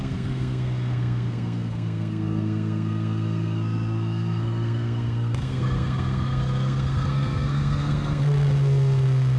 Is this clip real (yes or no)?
no